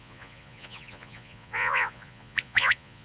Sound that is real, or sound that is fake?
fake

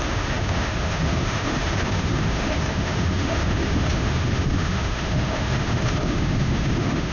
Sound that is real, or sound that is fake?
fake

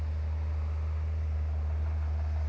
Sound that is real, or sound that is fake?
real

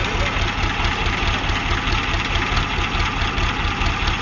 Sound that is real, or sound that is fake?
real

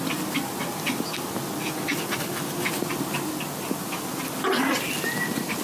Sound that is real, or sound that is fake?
real